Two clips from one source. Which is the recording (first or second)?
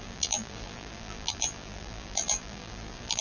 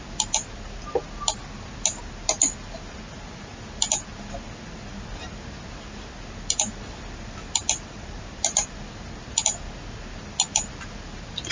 second